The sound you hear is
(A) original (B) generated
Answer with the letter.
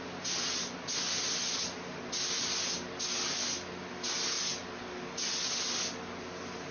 A